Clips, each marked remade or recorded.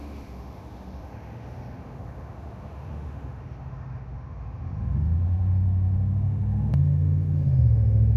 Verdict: remade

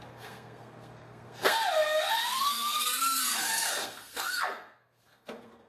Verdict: remade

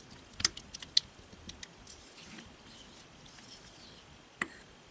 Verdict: recorded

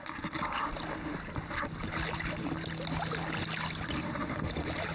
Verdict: recorded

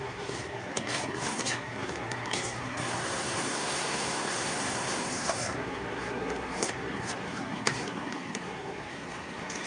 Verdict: remade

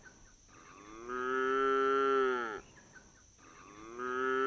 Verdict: recorded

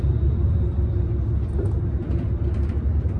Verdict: recorded